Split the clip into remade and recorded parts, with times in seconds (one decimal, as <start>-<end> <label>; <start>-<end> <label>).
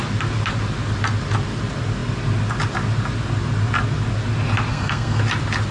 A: 0.0-4.7 recorded; 4.7-5.2 remade; 5.2-5.7 recorded